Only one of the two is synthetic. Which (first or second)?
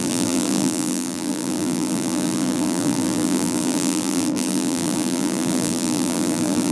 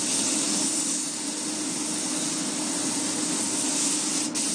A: first